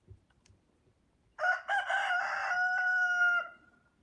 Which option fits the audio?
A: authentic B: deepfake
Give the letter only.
A